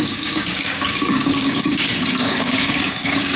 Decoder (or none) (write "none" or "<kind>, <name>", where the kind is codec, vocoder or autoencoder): codec, DAC